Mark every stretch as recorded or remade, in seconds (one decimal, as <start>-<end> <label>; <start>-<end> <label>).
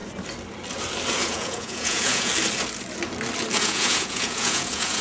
0.0-1.2 recorded; 1.2-2.3 remade; 2.3-3.6 recorded; 3.6-5.0 remade